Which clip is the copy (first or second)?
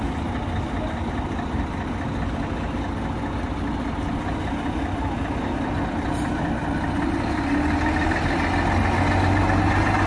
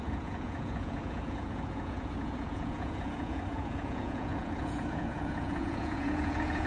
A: second